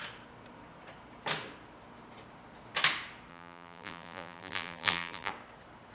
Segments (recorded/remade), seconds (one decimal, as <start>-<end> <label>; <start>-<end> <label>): 0.0-3.3 recorded; 3.3-5.3 remade; 5.3-5.9 recorded